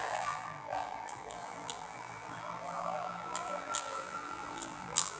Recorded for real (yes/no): no